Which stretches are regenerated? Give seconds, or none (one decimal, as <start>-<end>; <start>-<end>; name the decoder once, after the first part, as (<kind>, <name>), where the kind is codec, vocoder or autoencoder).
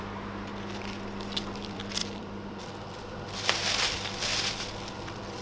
0.0-0.5 (vocoder, BigVGAN v2); 1.4-4.3; 4.9-5.4